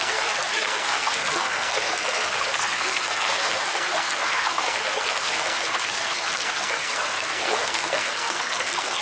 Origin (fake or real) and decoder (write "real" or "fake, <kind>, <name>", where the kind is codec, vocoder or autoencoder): fake, codec, SNAC